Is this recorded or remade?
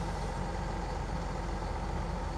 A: recorded